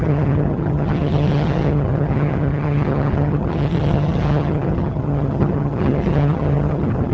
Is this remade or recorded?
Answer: remade